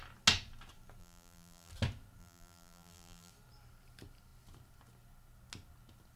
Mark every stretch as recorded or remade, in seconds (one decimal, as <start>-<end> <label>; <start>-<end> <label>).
0.0-1.0 recorded; 1.0-1.7 remade; 1.7-2.2 recorded; 2.2-3.3 remade; 3.3-6.2 recorded